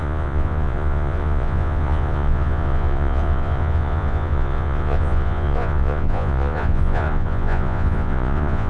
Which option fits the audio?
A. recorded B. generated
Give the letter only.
B